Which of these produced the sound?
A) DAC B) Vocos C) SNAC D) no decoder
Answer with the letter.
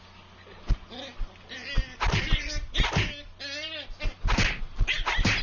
D